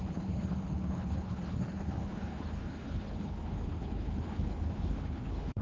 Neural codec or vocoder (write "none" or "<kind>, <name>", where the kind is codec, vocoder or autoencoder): codec, HILCodec